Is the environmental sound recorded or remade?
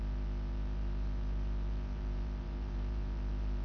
remade